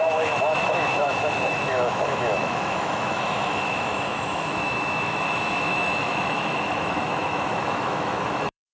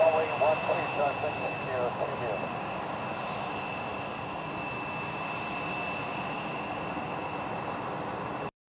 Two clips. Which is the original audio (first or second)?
second